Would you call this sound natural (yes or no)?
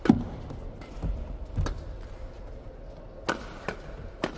yes